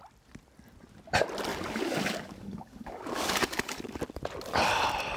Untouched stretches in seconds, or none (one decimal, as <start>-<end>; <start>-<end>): 0.0-1.5; 4.0-5.2